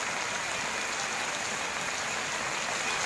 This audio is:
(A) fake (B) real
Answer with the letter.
B